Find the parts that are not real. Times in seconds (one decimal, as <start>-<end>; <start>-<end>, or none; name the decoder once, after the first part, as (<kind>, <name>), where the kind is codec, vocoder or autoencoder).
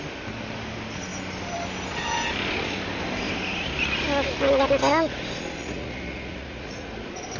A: 5.6-6.9 (vocoder, Vocos)